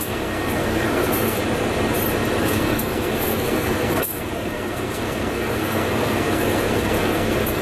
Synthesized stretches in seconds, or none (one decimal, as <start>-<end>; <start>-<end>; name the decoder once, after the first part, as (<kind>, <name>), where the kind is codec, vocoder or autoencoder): 0.0-1.4 (codec, SNAC); 2.4-7.6

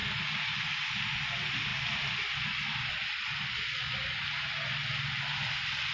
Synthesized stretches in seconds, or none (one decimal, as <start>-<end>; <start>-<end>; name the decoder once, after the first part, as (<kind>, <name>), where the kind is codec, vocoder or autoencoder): none